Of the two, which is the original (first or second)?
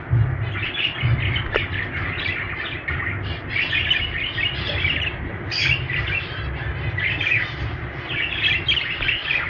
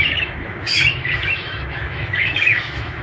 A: first